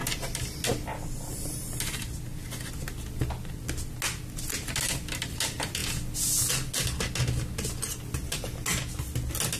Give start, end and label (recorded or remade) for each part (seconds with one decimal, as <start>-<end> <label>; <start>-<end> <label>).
0.0-9.6 recorded